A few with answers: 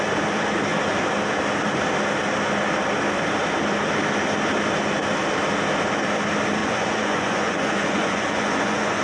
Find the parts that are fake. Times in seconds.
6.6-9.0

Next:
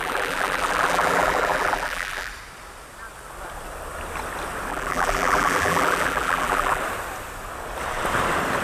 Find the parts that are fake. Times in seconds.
0.0-2.3; 4.7-6.8

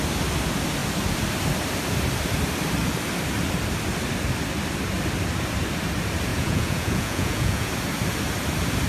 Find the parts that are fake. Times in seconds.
6.3-7.7

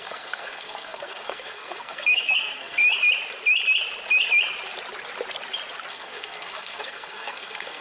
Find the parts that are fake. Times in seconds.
0.0-2.8; 5.9-7.8

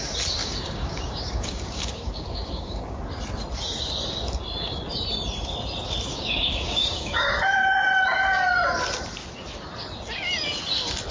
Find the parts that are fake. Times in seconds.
0.4-3.0; 6.1-7.3

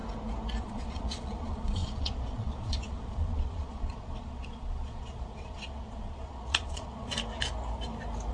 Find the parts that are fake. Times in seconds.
0.6-7.1

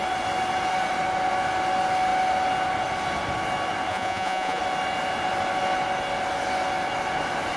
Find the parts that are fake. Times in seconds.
3.9-4.6